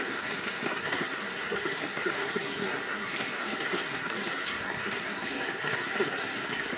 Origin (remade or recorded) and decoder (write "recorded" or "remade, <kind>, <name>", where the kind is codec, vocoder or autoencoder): remade, codec, SNAC